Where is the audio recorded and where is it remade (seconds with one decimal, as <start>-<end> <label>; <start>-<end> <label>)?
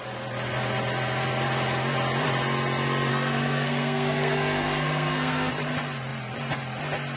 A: 0.0-3.1 recorded; 3.1-5.5 remade; 5.5-7.2 recorded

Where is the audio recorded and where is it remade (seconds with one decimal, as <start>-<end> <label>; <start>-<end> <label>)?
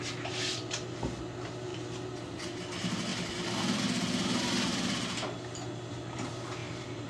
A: 0.0-3.1 recorded; 3.1-3.8 remade; 3.8-6.6 recorded; 6.6-7.1 remade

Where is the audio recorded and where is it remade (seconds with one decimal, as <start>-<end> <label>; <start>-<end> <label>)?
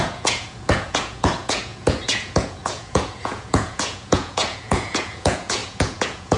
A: 0.0-6.4 remade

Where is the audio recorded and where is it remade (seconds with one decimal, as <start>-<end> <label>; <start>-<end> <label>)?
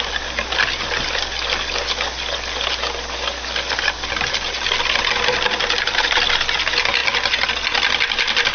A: 0.0-8.5 recorded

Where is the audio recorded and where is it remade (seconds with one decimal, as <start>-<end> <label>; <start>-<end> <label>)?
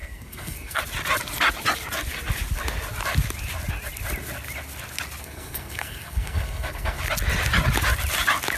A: 0.0-0.8 remade; 0.8-5.2 recorded; 5.2-7.0 remade; 7.0-8.6 recorded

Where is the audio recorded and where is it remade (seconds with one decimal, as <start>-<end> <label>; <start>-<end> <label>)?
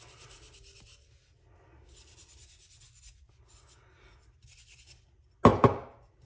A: 0.0-6.3 recorded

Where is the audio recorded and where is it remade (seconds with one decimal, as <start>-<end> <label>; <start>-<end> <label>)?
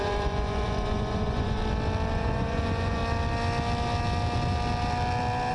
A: 0.0-1.6 remade; 1.6-2.1 recorded; 2.1-3.0 remade; 3.0-5.5 recorded